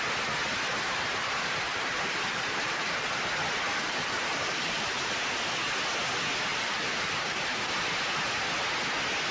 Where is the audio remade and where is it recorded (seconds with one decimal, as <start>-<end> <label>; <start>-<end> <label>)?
0.0-0.7 recorded; 0.7-3.2 remade; 3.2-3.8 recorded; 3.8-5.1 remade; 5.1-6.5 recorded; 6.5-7.7 remade; 7.7-9.3 recorded